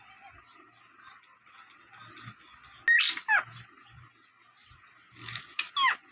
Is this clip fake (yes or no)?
no